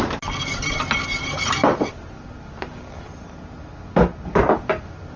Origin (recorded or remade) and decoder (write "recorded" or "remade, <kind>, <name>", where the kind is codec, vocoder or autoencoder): recorded